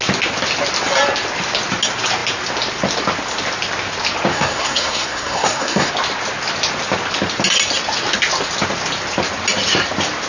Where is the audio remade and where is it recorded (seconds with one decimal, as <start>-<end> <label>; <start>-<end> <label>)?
0.0-4.3 recorded; 4.3-5.9 remade; 5.9-10.3 recorded